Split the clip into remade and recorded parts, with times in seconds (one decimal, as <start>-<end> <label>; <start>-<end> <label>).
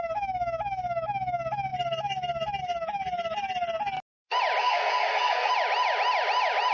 0.0-4.6 recorded; 4.6-5.5 remade; 5.5-6.7 recorded